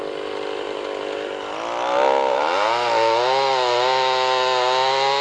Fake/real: real